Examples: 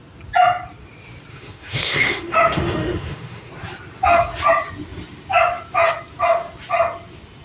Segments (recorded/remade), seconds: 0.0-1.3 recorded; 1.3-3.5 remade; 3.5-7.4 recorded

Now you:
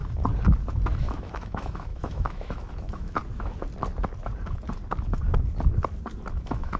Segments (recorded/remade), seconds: 0.0-1.0 recorded; 1.0-3.2 remade; 3.2-6.3 recorded; 6.3-6.8 remade

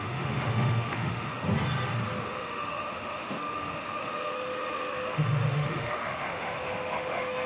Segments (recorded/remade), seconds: 0.0-1.3 remade; 1.3-2.2 recorded; 2.2-7.5 remade

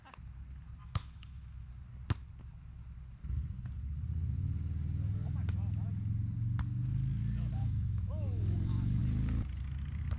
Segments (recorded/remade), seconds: 0.0-0.8 recorded; 0.8-1.7 remade; 1.7-7.6 recorded; 7.6-9.0 remade; 9.0-10.2 recorded

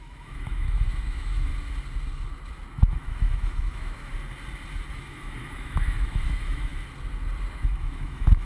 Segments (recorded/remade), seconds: 0.0-1.5 remade; 1.5-2.7 recorded; 2.7-4.1 remade; 4.1-4.9 recorded; 4.9-6.7 remade; 6.7-7.5 recorded; 7.5-8.4 remade

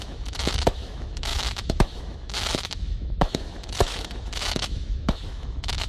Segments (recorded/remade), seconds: 0.0-5.9 remade

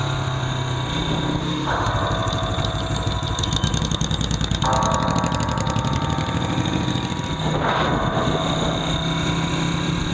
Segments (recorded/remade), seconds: 0.0-1.4 recorded; 1.4-1.9 remade; 1.9-10.1 recorded

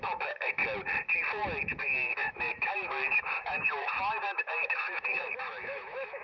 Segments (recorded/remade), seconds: 0.0-0.6 remade; 0.6-1.7 recorded; 1.7-6.2 remade